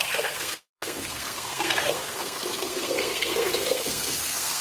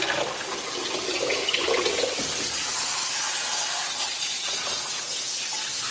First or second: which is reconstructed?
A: first